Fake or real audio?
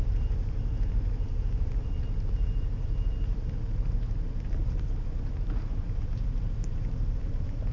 fake